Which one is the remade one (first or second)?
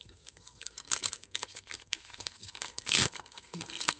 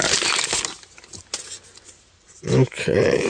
first